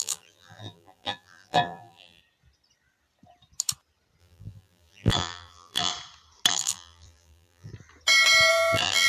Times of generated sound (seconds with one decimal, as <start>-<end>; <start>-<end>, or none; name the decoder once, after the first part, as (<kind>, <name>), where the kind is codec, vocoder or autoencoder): 0.0-2.2 (vocoder, BigVGAN v2); 4.2-5.9; 6.5-7.7; 8.5-9.1